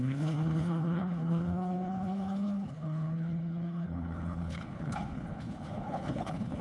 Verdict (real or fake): fake